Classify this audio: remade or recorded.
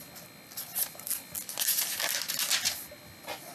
recorded